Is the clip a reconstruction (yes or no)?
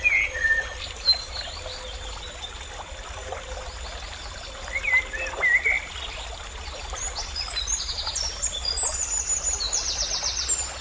no